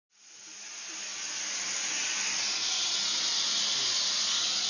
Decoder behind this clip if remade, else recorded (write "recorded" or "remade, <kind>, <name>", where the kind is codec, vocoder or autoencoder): recorded